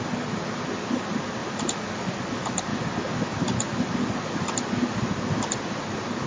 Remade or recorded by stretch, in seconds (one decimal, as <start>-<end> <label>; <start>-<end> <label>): 0.0-6.3 recorded